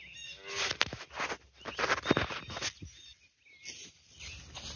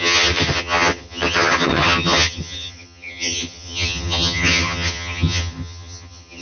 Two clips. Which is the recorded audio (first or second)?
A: first